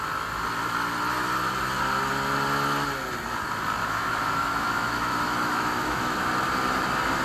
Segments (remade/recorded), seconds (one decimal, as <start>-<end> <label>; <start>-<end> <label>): 0.0-3.8 recorded; 3.8-6.3 remade; 6.3-7.2 recorded